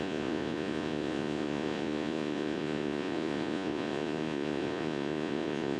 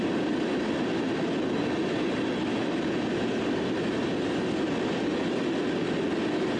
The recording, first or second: second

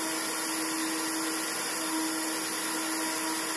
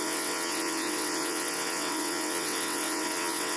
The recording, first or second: first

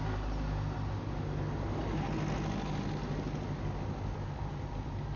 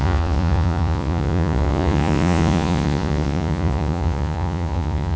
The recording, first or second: first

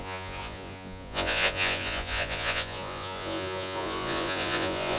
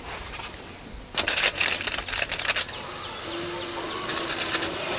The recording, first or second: second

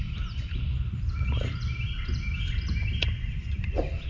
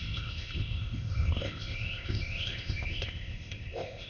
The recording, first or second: first